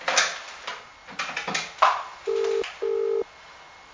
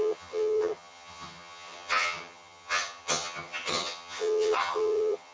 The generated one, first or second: second